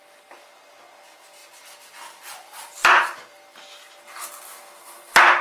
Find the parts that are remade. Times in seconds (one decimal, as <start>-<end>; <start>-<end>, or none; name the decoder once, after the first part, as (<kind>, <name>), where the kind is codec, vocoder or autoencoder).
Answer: 1.4-3.6 (vocoder, BigVGAN v2)